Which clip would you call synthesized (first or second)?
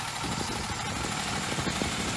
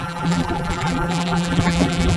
second